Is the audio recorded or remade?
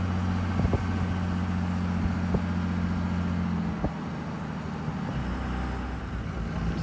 recorded